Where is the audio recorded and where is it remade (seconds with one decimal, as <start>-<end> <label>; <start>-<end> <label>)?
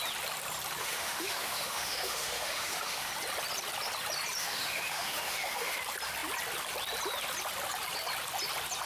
0.0-0.8 recorded; 0.8-3.1 remade; 3.1-4.4 recorded; 4.4-5.8 remade; 5.8-8.9 recorded